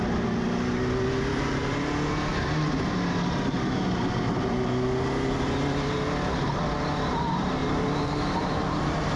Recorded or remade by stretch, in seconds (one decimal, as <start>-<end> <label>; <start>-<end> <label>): 0.0-1.3 recorded; 1.3-1.9 remade; 1.9-7.6 recorded; 7.6-9.2 remade